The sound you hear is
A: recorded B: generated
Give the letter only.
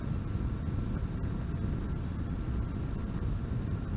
A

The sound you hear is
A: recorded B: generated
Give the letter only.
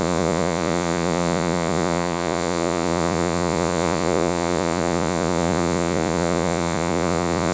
B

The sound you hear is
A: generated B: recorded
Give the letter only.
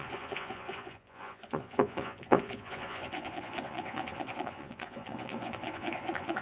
A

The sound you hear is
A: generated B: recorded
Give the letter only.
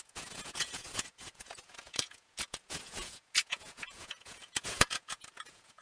A